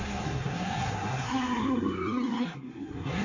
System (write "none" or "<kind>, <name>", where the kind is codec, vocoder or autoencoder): codec, SNAC